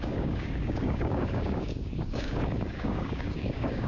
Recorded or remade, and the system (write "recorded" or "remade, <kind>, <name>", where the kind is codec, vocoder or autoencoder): remade, codec, DAC